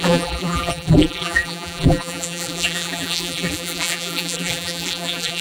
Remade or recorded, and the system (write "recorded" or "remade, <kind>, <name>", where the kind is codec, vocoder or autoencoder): remade, vocoder, BigVGAN v2